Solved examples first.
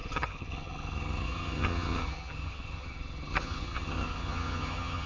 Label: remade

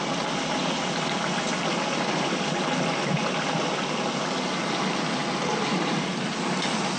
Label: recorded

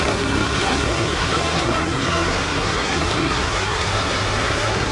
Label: remade